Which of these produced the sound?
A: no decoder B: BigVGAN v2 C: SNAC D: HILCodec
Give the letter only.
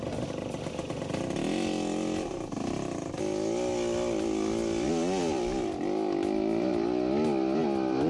A